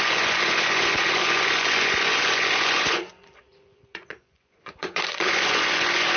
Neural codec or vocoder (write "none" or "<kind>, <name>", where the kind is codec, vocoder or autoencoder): vocoder, Vocos